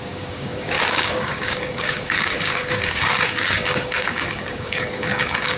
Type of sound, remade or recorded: remade